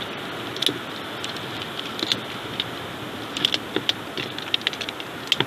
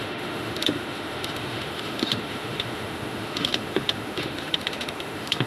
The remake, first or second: second